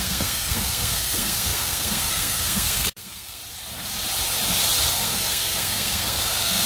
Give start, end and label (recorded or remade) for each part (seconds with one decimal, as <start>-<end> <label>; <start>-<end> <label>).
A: 0.0-3.4 remade; 3.4-4.9 recorded; 4.9-6.7 remade